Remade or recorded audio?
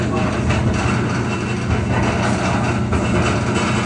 recorded